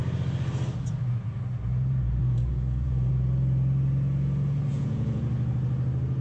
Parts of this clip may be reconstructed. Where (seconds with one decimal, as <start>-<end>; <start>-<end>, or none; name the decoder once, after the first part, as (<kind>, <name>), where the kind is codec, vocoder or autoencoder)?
2.2-3.1 (vocoder, Vocos); 4.7-5.2

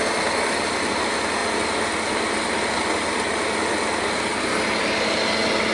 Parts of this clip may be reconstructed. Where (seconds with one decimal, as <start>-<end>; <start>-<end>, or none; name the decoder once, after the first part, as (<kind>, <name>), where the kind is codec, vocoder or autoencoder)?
none